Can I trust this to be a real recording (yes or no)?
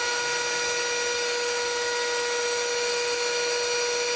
yes